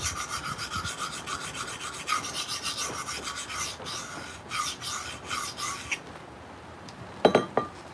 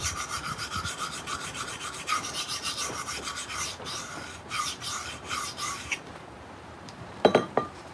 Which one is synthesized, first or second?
second